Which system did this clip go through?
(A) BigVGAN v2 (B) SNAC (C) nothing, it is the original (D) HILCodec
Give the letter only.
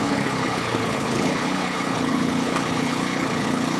D